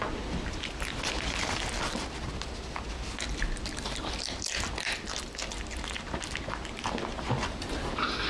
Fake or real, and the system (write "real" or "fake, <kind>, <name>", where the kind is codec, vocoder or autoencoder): real